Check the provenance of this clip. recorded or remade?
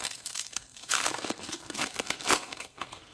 remade